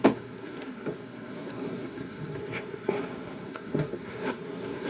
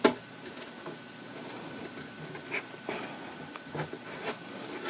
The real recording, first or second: second